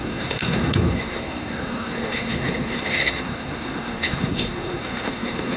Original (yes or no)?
no